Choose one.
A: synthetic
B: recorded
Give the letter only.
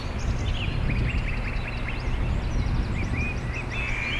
B